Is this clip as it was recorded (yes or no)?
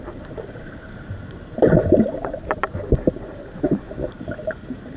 no